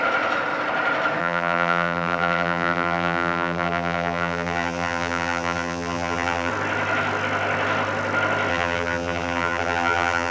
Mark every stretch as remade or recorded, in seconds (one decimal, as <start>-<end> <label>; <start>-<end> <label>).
0.0-1.2 recorded; 1.2-6.5 remade; 6.5-8.5 recorded; 8.5-10.3 remade